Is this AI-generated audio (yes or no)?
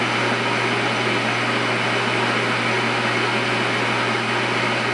no